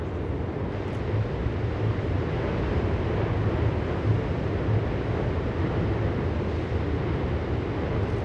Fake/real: real